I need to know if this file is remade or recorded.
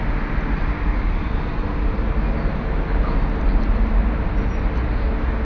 recorded